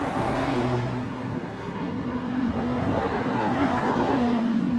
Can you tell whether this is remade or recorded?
remade